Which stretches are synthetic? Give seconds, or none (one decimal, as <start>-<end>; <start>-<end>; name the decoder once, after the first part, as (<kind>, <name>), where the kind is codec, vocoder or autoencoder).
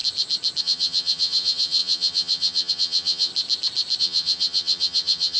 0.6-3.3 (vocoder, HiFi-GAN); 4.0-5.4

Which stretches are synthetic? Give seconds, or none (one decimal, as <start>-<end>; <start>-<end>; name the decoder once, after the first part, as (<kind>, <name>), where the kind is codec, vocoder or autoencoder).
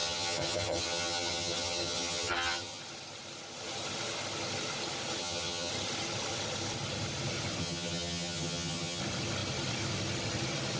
0.0-2.8 (vocoder, HiFi-GAN); 5.2-5.7; 7.6-9.0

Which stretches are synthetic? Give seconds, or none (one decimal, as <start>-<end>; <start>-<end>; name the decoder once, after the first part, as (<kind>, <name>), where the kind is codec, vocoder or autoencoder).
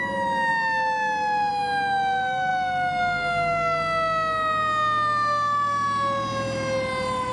none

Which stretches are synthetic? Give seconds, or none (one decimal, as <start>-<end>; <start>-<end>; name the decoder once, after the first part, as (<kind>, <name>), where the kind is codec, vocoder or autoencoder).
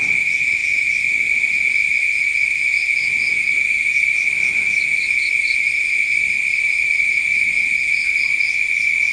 none